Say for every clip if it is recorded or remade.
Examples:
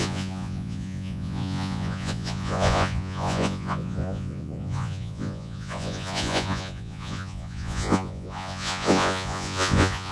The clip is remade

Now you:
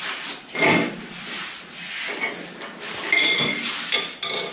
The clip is recorded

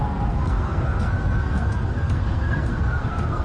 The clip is remade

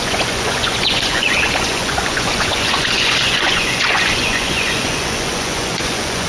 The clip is remade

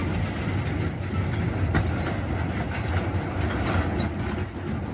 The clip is recorded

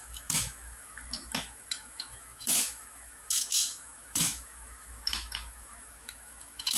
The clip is remade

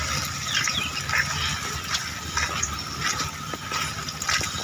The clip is recorded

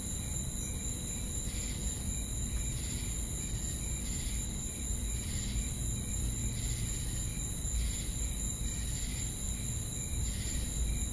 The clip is recorded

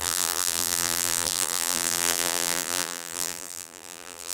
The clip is remade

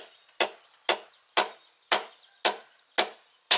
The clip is recorded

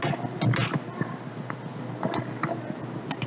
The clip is recorded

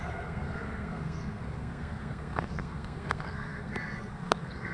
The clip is remade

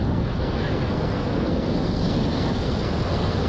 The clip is remade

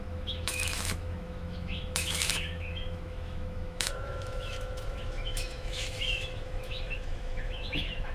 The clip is remade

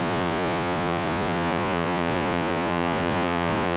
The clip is remade